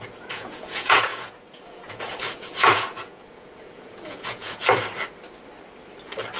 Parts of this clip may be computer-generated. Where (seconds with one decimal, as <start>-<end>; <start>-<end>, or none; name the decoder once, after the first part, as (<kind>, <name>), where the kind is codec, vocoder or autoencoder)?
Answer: 0.0-4.6 (vocoder, Vocos)